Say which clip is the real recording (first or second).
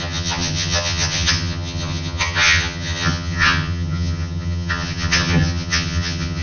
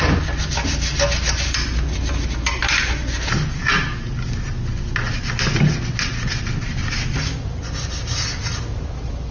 second